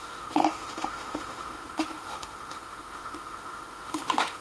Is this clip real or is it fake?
fake